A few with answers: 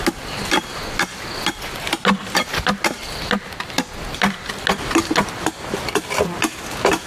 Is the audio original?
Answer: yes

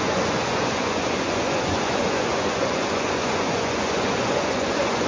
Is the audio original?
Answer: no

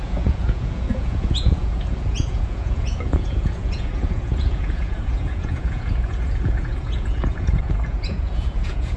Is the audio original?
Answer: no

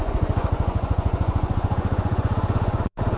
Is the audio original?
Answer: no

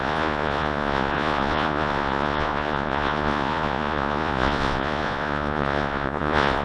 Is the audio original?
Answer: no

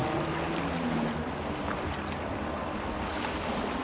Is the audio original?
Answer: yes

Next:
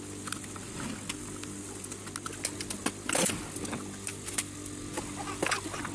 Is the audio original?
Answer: yes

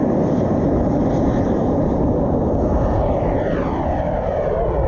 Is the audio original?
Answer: yes